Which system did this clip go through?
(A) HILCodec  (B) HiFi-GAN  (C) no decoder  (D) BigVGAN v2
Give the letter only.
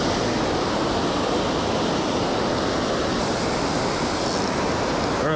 C